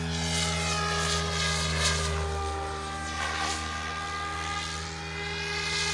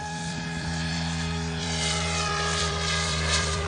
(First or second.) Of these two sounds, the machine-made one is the second